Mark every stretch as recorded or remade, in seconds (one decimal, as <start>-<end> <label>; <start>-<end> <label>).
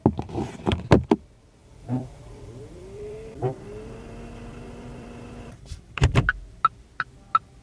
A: 0.0-1.6 recorded; 1.6-6.2 remade; 6.2-7.6 recorded